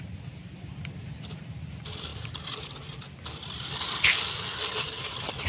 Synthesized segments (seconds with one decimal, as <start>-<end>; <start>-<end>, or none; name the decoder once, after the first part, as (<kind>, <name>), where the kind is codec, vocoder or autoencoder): none